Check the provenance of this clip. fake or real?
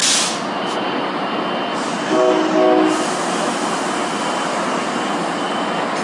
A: real